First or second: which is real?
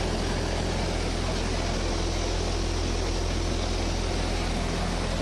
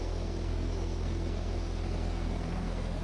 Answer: first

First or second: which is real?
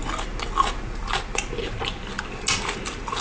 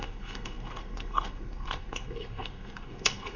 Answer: first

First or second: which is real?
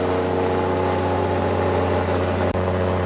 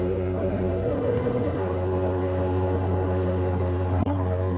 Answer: first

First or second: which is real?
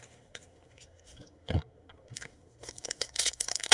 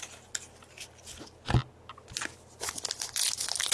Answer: second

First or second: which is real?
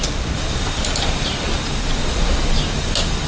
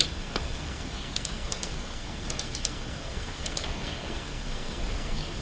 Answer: first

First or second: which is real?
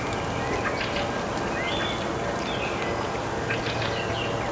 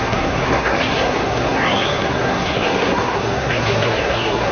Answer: first